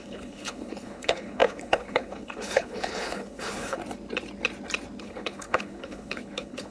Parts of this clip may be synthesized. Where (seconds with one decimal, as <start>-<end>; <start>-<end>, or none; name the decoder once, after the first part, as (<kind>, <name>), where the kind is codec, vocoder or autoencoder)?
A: 0.0-3.8 (codec, HILCodec); 5.0-6.7